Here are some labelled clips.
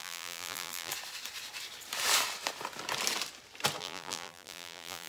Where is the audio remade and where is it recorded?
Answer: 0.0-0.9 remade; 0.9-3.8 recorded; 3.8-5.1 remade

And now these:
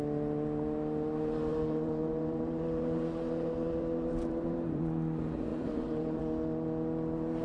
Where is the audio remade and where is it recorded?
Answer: 0.0-1.5 recorded; 1.5-4.8 remade; 4.8-5.5 recorded; 5.5-6.2 remade; 6.2-7.4 recorded

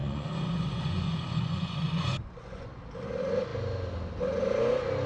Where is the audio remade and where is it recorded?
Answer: 0.0-2.7 remade; 2.7-5.1 recorded

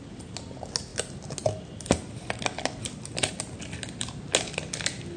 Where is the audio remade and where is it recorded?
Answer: 0.0-5.2 recorded

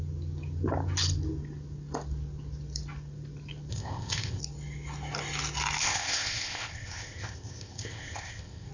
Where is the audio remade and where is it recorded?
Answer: 0.0-3.7 recorded; 3.7-4.4 remade; 4.4-5.8 recorded; 5.8-8.7 remade

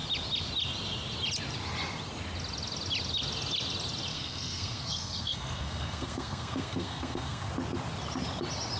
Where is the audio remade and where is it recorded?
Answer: 0.0-4.1 recorded; 4.1-7.5 remade; 7.5-8.8 recorded

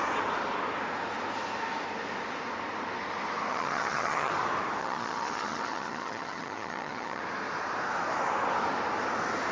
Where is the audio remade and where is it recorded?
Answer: 0.0-3.5 recorded; 3.5-4.3 remade; 4.3-4.8 recorded; 4.8-7.2 remade; 7.2-9.5 recorded

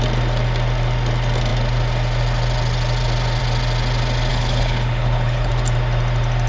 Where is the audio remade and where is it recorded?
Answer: 0.0-4.3 recorded; 4.3-5.5 remade; 5.5-6.5 recorded